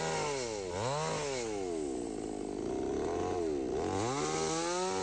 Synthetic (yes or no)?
no